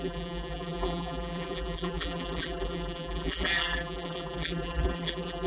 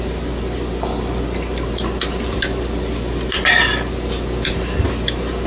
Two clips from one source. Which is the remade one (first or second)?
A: first